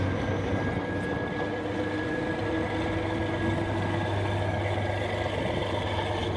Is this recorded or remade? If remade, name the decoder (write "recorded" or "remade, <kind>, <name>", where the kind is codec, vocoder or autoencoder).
recorded